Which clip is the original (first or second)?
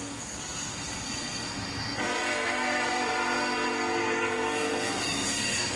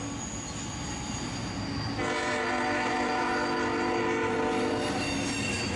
second